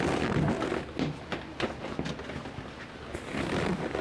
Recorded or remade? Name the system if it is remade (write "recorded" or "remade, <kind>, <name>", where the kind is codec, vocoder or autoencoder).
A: recorded